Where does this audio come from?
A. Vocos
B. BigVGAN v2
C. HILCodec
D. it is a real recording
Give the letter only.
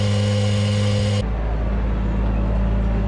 D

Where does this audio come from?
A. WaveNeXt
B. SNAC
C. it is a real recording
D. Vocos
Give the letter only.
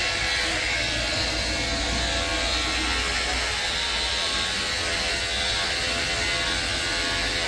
C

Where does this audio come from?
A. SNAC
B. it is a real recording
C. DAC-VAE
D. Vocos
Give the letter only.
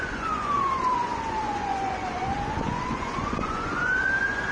D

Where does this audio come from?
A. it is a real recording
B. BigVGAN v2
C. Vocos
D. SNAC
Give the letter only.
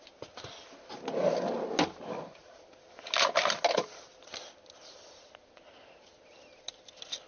A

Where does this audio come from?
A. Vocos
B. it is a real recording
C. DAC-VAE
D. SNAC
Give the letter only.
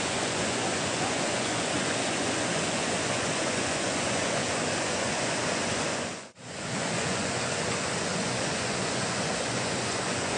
A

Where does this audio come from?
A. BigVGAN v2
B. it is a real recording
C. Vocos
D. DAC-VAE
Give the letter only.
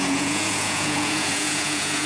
C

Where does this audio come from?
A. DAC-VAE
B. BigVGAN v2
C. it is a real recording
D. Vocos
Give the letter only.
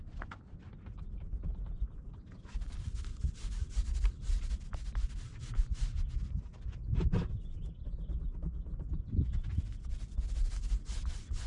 C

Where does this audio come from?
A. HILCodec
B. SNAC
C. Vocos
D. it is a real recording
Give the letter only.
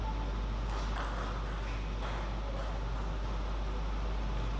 D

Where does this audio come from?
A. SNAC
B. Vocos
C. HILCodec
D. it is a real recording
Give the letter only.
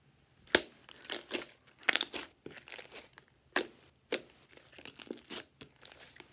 D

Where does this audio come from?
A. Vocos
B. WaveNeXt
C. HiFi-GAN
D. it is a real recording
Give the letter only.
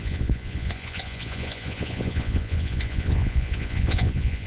A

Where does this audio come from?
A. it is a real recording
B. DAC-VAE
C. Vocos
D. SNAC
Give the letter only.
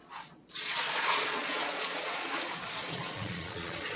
C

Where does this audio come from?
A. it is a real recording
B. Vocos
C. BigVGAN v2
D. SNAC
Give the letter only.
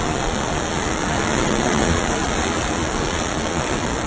B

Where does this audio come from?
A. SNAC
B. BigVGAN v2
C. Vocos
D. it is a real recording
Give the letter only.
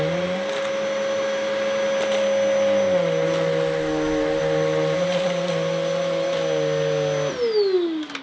D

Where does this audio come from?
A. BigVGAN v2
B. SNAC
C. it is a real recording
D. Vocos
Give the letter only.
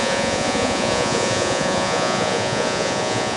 D